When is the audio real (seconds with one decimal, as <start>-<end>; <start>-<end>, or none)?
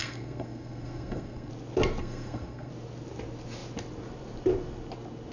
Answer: 1.5-2.0; 2.7-5.3